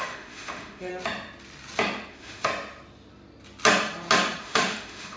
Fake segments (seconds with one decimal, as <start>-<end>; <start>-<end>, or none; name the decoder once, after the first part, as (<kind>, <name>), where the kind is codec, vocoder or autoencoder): 0.0-0.9 (autoencoder, DAC-VAE); 2.1-2.5; 4.4-5.2